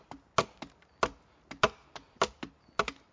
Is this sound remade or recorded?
recorded